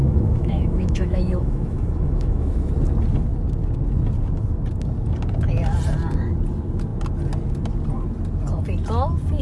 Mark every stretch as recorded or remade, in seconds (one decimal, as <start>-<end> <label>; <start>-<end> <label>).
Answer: 0.0-2.7 remade; 2.7-9.4 recorded